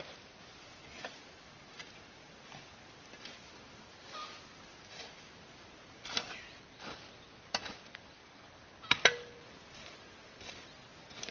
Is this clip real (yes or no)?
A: yes